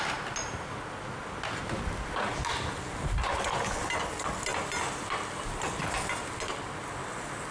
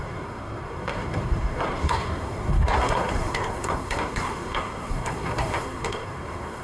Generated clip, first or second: second